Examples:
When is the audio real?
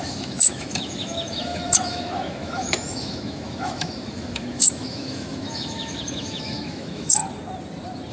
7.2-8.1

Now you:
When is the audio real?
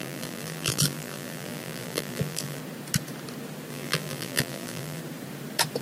2.6-3.7; 5.0-5.8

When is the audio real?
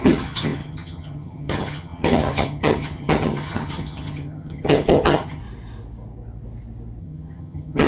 5.4-7.0